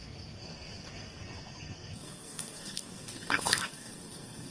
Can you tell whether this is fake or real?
fake